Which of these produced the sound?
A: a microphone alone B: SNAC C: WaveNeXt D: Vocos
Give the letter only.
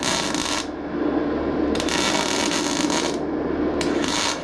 A